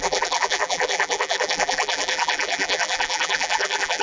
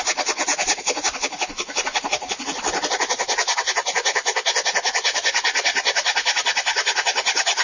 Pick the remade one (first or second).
first